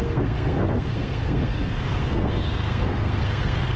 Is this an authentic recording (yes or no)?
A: no